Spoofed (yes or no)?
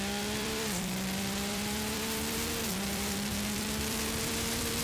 yes